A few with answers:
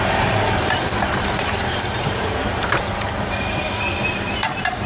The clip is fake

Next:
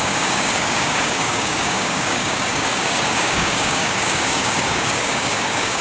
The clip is fake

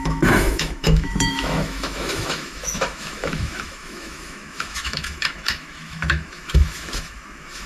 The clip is fake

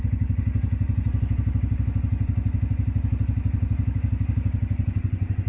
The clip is real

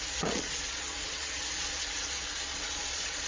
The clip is fake